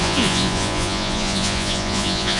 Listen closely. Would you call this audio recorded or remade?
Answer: remade